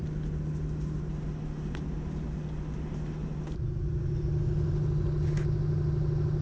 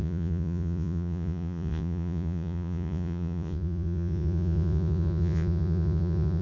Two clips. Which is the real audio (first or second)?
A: first